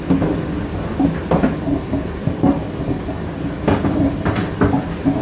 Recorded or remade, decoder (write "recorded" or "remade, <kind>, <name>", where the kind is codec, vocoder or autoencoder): recorded